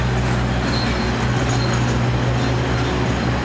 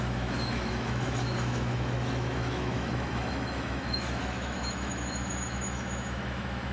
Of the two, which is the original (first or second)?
first